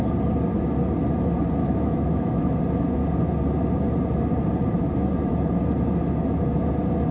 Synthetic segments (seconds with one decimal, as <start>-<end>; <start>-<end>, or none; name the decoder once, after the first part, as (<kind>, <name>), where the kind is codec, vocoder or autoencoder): 1.6-2.6 (autoencoder, DAC-VAE)